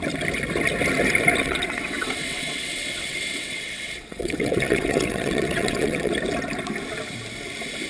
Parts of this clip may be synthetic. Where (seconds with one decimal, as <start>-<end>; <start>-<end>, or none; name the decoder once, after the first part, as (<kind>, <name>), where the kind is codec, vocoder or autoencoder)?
1.4-6.1 (vocoder, WaveNeXt)